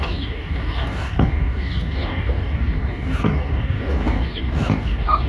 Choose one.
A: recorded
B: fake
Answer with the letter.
B